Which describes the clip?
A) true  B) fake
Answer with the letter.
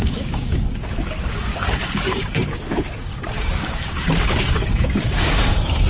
B